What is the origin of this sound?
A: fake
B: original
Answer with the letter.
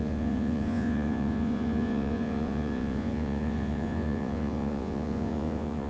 A